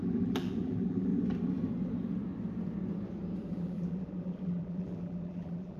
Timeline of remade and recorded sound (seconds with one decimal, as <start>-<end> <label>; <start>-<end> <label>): 0.0-1.1 remade; 1.1-3.5 recorded; 3.5-5.8 remade